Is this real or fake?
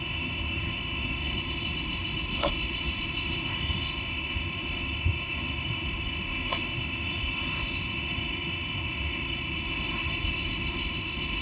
fake